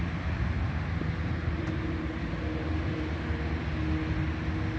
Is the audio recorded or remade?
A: recorded